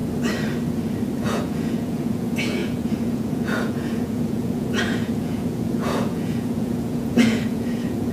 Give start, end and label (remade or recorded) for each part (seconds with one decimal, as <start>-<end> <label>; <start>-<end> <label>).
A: 0.0-1.2 recorded; 1.2-8.1 remade